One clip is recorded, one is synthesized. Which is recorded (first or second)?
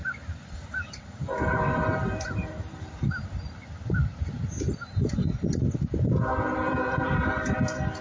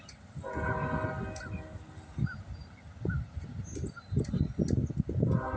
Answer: second